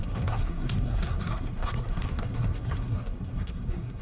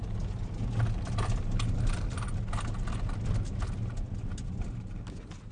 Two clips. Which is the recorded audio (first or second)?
second